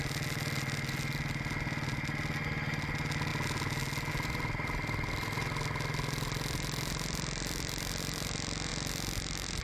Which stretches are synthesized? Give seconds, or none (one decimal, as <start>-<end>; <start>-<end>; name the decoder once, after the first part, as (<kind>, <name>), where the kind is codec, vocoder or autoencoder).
none